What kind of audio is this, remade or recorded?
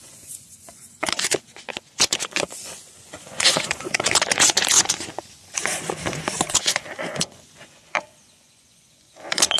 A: remade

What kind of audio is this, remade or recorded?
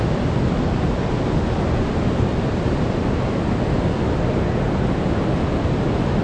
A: recorded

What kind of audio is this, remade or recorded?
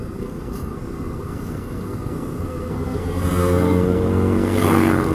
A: remade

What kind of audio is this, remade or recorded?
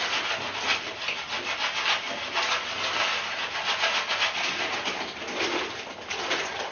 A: recorded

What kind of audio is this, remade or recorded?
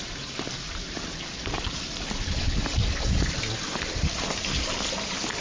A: recorded